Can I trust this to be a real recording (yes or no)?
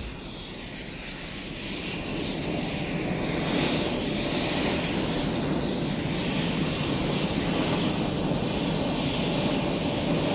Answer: yes